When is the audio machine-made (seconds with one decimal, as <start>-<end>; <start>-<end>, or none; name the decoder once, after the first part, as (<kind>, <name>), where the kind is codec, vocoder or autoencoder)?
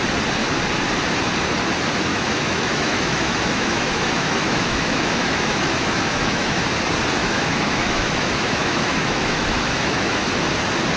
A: 2.1-6.6 (autoencoder, DAC-VAE); 7.2-10.3